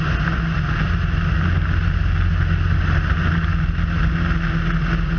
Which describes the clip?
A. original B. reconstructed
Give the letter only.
A